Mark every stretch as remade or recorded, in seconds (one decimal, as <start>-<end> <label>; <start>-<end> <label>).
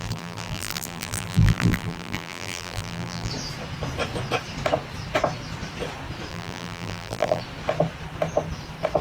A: 0.0-3.3 remade; 3.3-6.3 recorded; 6.3-7.4 remade; 7.4-9.0 recorded